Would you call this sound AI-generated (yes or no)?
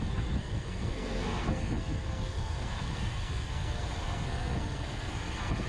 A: yes